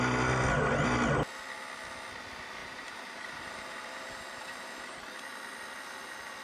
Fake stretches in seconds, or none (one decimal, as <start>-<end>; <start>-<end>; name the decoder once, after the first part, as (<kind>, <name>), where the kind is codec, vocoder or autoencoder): 2.6-4.9 (vocoder, BigVGAN v2)